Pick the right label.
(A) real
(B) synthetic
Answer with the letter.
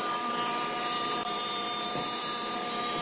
B